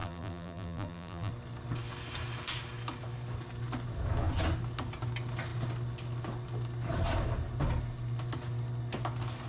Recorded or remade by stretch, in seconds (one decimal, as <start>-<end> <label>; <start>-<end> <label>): 0.0-1.3 remade; 1.3-9.5 recorded